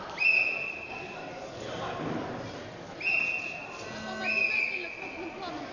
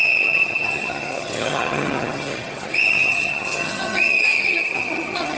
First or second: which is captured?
first